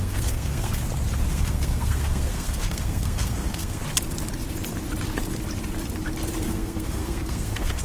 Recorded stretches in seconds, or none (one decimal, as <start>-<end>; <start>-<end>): 0.7-1.3; 3.8-6.4